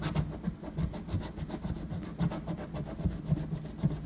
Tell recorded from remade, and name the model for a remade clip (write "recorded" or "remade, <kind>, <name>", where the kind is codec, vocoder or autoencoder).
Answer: recorded